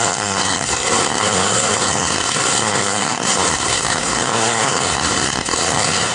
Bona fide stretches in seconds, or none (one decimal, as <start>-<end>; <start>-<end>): none